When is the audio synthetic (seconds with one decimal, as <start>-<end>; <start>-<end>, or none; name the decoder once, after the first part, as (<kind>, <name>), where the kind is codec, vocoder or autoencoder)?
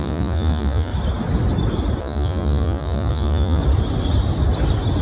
0.0-0.9 (vocoder, Vocos); 2.0-3.6